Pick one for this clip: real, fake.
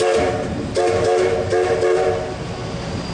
real